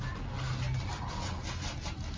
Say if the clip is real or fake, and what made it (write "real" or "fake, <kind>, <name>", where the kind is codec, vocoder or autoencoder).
real